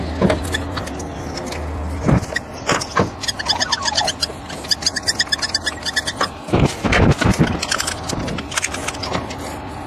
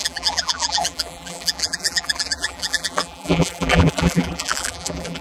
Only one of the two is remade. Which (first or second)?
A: second